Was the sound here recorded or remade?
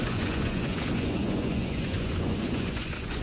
remade